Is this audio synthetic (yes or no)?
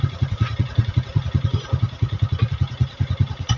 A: yes